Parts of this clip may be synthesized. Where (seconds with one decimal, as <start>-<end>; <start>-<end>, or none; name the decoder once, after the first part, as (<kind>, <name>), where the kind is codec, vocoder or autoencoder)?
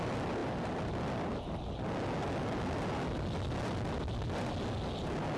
none